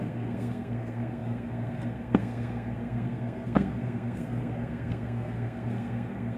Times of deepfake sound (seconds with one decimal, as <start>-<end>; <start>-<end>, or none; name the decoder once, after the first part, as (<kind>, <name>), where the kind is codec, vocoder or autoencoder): 0.0-6.4 (codec, SNAC)